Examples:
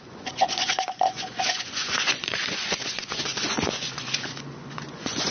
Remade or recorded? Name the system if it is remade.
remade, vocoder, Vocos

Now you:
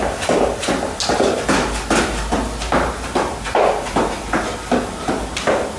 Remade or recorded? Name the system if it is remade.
recorded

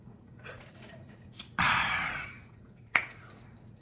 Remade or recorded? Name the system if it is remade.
remade, vocoder, Vocos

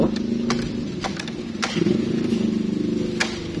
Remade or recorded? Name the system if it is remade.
recorded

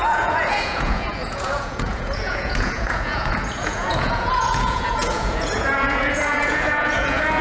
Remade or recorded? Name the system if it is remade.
remade, vocoder, Vocos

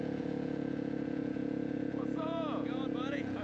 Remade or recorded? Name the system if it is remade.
remade, vocoder, Vocos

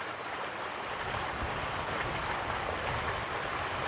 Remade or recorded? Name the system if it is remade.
recorded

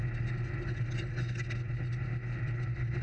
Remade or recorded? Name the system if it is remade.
recorded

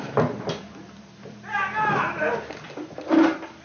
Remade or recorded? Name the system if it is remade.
recorded